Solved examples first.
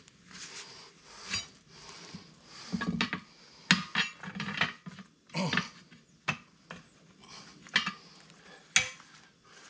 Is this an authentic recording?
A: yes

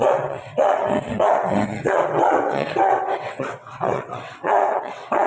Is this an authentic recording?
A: no